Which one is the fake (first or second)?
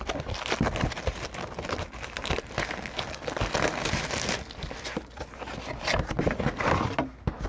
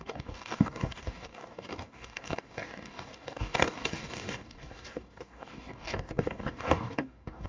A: second